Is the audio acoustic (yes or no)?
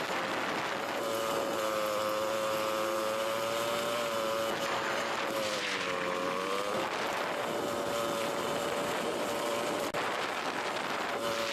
yes